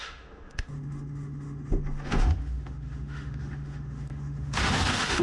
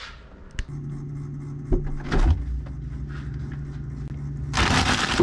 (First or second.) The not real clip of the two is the first